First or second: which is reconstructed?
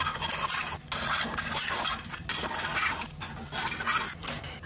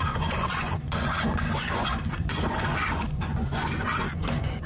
second